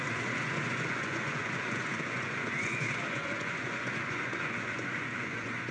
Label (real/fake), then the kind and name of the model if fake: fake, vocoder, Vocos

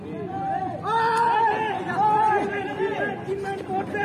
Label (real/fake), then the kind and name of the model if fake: real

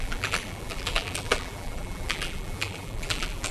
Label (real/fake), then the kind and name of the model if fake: fake, vocoder, BigVGAN v2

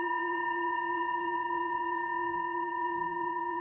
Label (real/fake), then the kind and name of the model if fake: fake, vocoder, WaveNeXt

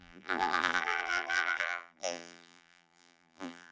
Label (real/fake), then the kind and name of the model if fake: fake, vocoder, BigVGAN v2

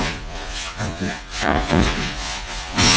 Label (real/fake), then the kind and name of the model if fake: fake, vocoder, Vocos